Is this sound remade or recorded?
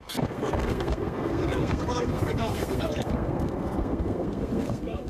remade